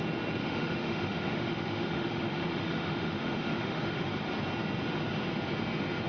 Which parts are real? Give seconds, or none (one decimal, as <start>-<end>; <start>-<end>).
0.0-0.4; 4.1-6.1